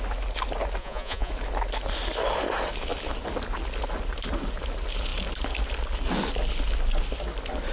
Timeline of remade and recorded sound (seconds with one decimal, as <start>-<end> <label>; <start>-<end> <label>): 0.0-0.8 recorded; 0.8-1.3 remade; 1.3-7.7 recorded

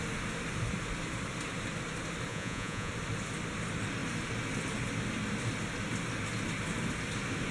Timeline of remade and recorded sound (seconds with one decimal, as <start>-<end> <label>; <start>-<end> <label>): 0.0-2.3 recorded; 2.3-2.9 remade; 2.9-7.5 recorded

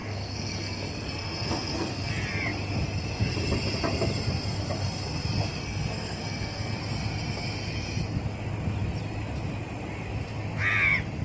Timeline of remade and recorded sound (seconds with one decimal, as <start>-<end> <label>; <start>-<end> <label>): 0.0-2.1 remade; 2.1-5.6 recorded; 5.6-6.8 remade; 6.8-11.2 recorded

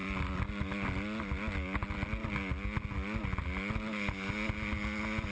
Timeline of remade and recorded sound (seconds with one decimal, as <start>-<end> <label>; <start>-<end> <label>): 0.0-5.3 recorded

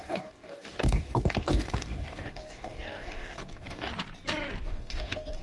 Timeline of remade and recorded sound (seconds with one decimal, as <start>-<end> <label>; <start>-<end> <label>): 0.0-3.9 remade; 3.9-4.6 recorded; 4.6-5.4 remade

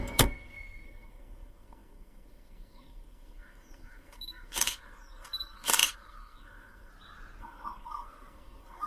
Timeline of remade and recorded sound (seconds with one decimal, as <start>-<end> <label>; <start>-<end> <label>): 0.0-6.9 remade; 6.9-7.4 recorded; 7.4-8.9 remade

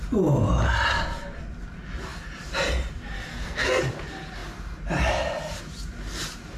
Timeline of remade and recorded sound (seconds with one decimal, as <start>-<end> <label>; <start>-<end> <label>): 0.0-3.3 recorded; 3.3-3.8 remade; 3.8-6.6 recorded

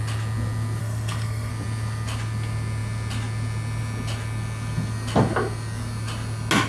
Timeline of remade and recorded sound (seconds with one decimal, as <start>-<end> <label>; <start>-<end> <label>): 0.0-0.8 recorded; 0.8-1.5 remade; 1.5-6.7 recorded